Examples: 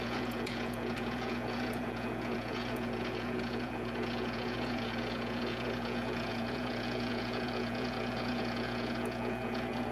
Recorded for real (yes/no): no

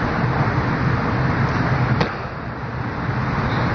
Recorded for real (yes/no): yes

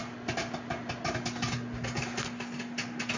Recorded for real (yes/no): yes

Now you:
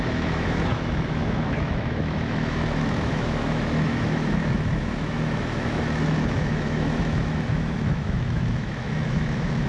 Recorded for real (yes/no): no